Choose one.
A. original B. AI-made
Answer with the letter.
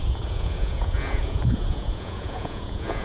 B